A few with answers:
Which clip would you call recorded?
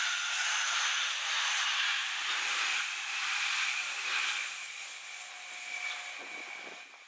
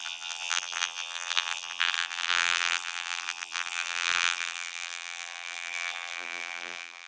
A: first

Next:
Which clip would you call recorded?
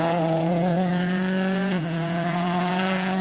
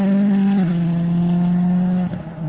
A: second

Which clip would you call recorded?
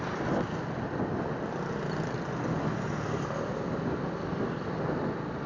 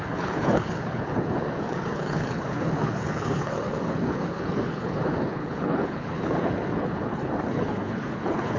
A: first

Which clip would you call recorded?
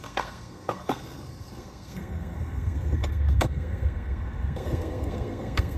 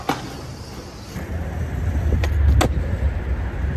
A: second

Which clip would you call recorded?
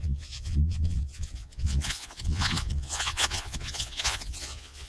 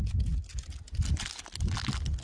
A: second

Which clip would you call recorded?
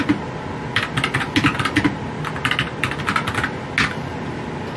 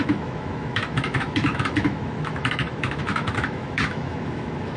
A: first